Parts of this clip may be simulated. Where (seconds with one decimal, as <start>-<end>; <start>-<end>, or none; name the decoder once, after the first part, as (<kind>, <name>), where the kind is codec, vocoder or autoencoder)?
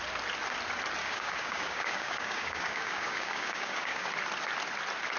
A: 1.0-4.1 (codec, DAC)